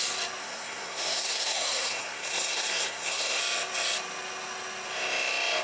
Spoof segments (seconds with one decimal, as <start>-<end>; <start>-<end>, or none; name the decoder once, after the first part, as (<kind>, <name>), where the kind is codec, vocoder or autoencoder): 0.4-3.4 (codec, SNAC)